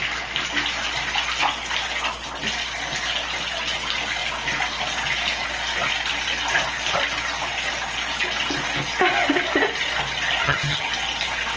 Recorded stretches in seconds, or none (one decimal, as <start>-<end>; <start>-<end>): 0.0-10.4; 10.9-11.6